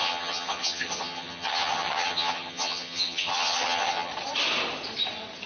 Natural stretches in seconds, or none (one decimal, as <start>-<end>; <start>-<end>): 4.1-5.5